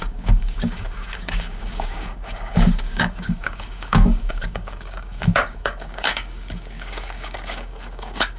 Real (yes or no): no